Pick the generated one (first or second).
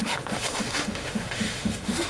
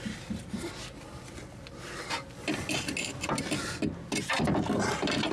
first